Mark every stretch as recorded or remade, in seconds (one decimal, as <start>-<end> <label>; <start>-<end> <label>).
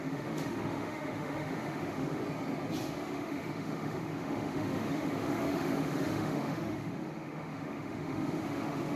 0.0-2.2 remade; 2.2-2.8 recorded; 2.8-9.0 remade